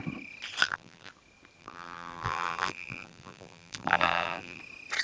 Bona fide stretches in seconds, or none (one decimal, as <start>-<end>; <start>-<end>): 0.0-0.6; 1.1-1.6; 4.6-5.0